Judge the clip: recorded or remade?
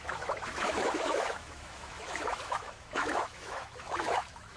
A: remade